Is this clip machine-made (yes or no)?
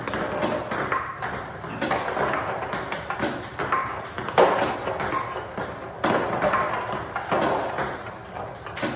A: no